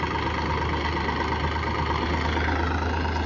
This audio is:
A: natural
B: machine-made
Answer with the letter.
A